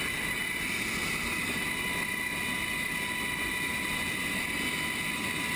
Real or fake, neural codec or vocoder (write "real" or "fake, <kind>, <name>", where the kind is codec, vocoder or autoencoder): real